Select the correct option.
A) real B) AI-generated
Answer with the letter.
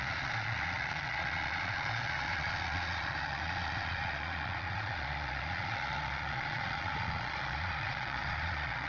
B